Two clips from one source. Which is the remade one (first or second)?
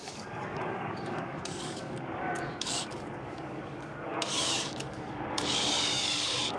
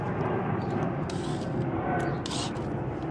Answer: first